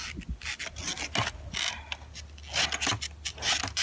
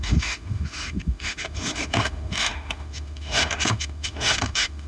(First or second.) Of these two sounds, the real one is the first